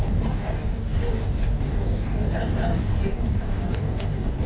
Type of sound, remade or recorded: remade